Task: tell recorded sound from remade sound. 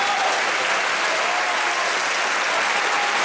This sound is recorded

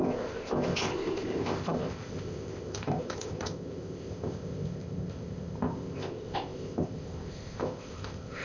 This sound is remade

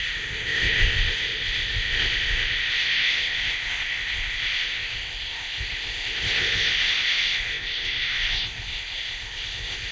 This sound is remade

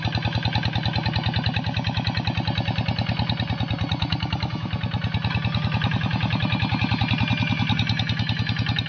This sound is recorded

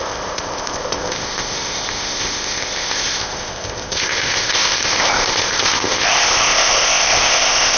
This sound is remade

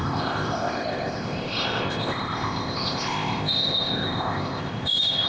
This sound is remade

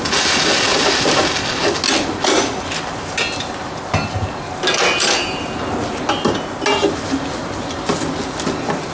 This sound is recorded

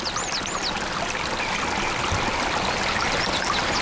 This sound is recorded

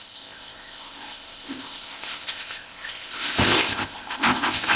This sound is remade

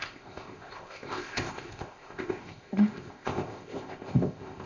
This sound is remade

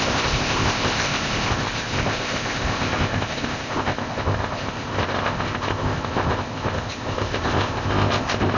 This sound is remade